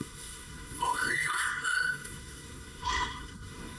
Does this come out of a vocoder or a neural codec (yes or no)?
yes